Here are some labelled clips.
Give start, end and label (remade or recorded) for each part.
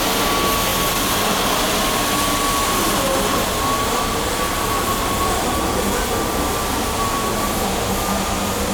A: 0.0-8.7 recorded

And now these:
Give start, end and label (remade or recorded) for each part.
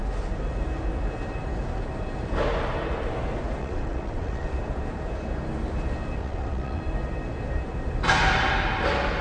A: 0.0-3.6 recorded; 3.6-4.5 remade; 4.5-6.2 recorded; 6.2-6.8 remade; 6.8-9.2 recorded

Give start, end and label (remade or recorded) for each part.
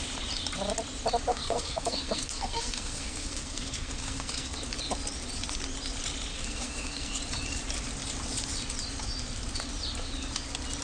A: 0.0-1.3 recorded; 1.3-4.6 remade; 4.6-6.3 recorded; 6.3-7.2 remade; 7.2-10.8 recorded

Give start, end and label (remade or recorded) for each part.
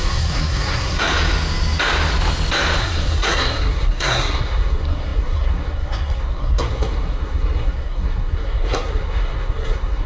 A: 0.0-1.1 remade; 1.1-2.8 recorded; 2.8-10.1 remade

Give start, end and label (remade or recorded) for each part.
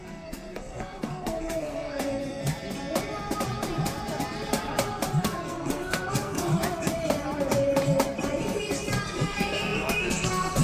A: 0.0-2.4 remade; 2.4-5.2 recorded; 5.2-6.5 remade; 6.5-9.0 recorded; 9.0-10.6 remade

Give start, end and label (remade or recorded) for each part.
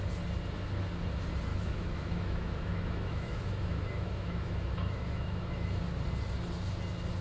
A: 0.0-1.5 recorded; 1.5-5.8 remade; 5.8-7.2 recorded